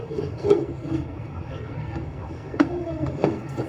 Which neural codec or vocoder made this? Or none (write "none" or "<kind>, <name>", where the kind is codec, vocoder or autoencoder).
codec, SNAC